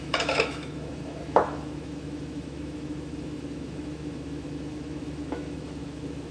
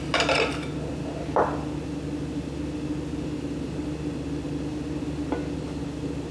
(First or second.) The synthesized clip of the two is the first